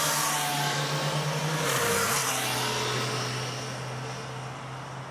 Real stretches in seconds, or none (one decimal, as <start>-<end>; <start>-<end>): 0.0-5.1